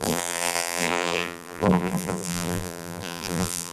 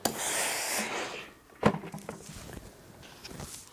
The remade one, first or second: first